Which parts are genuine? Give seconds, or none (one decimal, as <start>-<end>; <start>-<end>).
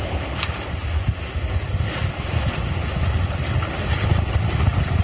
0.0-5.0